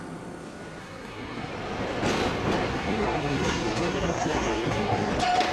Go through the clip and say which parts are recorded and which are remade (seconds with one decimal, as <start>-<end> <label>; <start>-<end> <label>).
0.0-0.8 recorded; 0.8-1.5 remade; 1.5-2.7 recorded; 2.7-5.1 remade; 5.1-5.5 recorded